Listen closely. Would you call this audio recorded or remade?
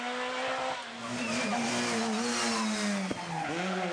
recorded